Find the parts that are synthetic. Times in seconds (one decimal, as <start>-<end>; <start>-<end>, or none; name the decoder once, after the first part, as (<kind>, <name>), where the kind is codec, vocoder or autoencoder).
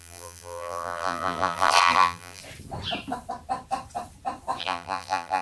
0.0-2.4 (vocoder, BigVGAN v2); 4.6-5.4